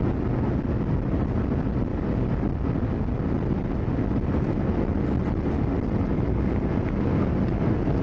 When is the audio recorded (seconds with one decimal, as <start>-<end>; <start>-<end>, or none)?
0.0-8.0